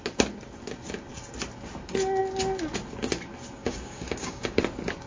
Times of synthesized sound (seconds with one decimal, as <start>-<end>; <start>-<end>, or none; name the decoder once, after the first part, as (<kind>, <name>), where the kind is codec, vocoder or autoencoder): 3.6-4.6 (codec, DAC)